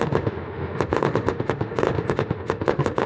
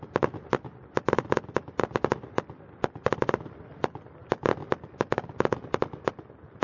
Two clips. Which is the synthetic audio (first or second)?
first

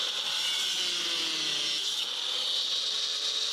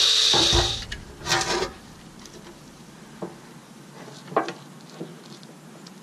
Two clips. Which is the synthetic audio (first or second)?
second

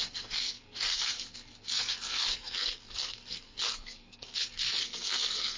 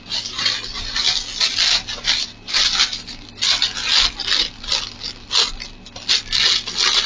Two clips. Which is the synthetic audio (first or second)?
first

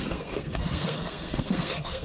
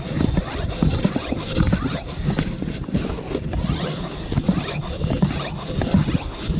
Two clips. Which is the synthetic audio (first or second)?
first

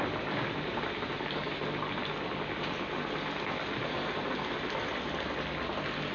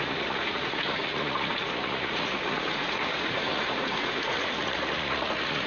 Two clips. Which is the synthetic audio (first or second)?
second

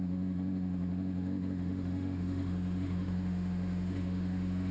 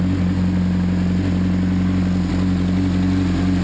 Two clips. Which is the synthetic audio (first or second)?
first